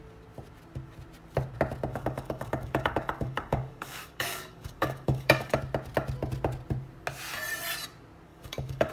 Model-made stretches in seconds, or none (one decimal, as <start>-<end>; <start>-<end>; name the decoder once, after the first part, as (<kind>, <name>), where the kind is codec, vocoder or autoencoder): 1.9-5.6 (codec, DAC); 8.3-8.9